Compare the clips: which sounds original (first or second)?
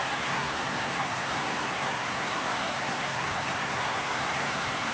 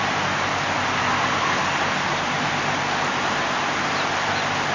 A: second